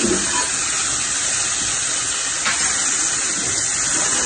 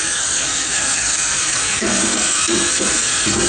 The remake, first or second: second